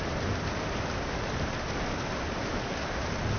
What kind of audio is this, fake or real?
real